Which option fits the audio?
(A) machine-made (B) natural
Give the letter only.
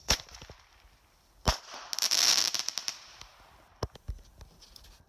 B